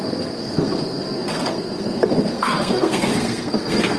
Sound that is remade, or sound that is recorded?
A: remade